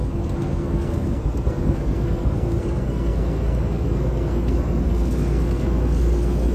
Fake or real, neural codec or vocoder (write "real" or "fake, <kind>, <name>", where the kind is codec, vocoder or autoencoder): fake, codec, SNAC